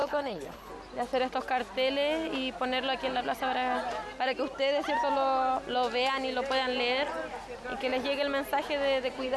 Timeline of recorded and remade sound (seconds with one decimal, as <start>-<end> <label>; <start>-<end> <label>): 0.0-0.7 remade; 0.7-9.4 recorded